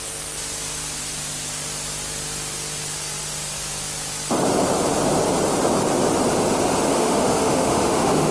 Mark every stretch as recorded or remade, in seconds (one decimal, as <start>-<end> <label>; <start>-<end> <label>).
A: 0.0-6.9 recorded; 6.9-8.3 remade